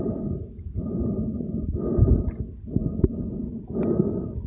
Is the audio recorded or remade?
recorded